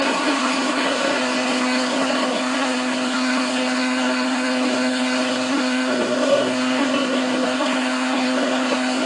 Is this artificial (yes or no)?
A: yes